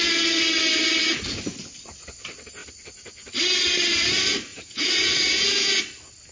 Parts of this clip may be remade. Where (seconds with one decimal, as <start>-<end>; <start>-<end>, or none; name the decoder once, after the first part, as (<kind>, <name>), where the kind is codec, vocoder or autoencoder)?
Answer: 4.5-5.8 (vocoder, Vocos)